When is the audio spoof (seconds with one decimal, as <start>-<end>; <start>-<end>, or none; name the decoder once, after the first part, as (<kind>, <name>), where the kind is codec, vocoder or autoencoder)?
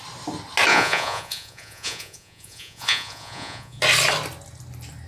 0.7-3.8 (vocoder, Vocos)